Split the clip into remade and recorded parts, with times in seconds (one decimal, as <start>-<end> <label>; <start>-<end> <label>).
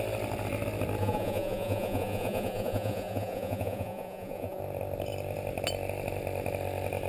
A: 0.0-1.0 recorded; 1.0-4.6 remade; 4.6-7.1 recorded